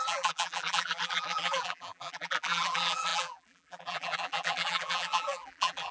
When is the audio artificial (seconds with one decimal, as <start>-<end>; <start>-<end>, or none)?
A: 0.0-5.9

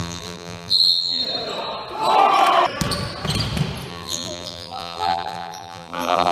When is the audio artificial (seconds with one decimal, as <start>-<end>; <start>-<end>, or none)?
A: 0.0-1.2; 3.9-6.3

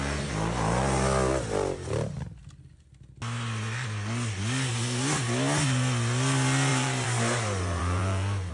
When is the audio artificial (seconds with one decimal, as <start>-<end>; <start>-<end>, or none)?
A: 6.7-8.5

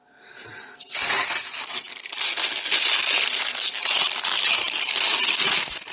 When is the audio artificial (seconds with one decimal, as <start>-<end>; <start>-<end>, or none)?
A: none

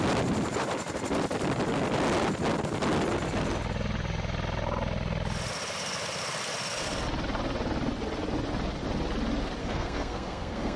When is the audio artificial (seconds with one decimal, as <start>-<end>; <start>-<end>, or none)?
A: 9.6-10.8

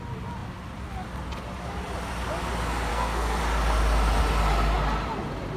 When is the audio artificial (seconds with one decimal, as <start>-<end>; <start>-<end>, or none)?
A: 2.9-3.4